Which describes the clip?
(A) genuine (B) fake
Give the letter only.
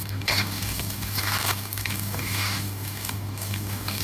B